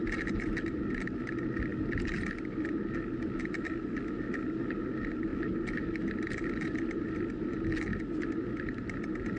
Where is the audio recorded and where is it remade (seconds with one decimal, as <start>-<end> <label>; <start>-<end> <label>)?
0.0-9.4 recorded